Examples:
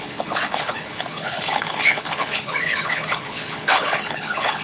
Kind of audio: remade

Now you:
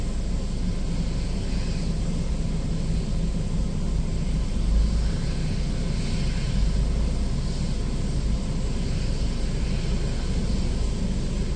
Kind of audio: recorded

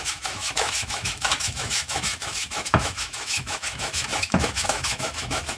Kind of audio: remade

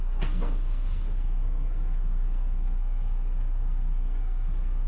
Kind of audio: remade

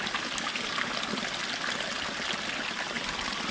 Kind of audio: recorded